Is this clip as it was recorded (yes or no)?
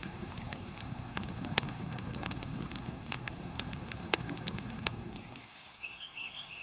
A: no